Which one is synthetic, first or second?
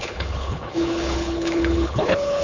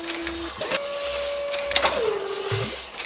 first